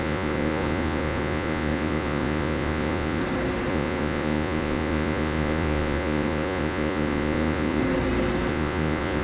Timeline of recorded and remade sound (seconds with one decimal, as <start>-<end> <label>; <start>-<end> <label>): 0.0-3.2 remade; 3.2-3.7 recorded; 3.7-7.8 remade; 7.8-8.5 recorded; 8.5-9.2 remade